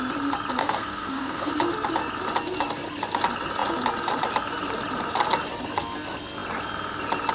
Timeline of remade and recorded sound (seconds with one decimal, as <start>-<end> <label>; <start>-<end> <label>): 0.0-0.6 recorded; 0.6-1.5 remade; 1.5-7.3 recorded